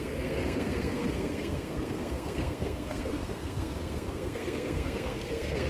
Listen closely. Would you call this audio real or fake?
fake